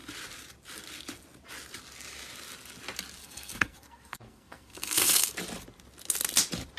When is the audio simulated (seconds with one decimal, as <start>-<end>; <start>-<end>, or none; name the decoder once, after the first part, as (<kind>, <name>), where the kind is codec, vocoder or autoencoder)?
3.2-5.3 (codec, SNAC)